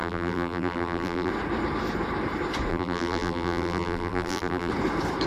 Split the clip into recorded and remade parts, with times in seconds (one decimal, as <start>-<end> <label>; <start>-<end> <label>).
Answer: 0.0-1.3 remade; 1.3-2.7 recorded; 2.7-4.7 remade; 4.7-5.3 recorded